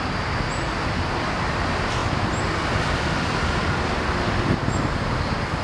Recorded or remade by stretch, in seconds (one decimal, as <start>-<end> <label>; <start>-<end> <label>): 0.0-5.6 recorded